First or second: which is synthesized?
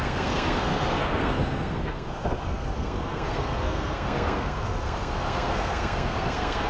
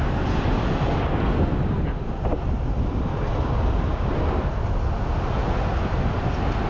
first